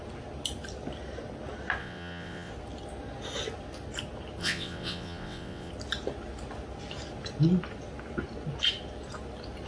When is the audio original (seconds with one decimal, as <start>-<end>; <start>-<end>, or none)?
0.0-1.8; 2.5-4.4; 5.7-9.7